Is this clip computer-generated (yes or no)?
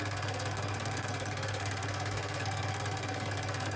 yes